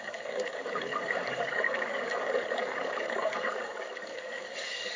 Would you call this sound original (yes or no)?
no